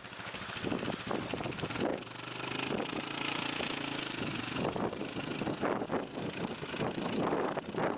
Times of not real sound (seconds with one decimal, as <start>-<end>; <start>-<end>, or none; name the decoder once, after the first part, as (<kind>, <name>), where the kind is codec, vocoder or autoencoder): 1.9-3.2 (vocoder, BigVGAN v2)